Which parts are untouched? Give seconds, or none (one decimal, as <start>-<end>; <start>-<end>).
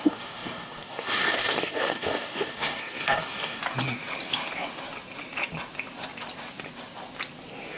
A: 3.6-7.8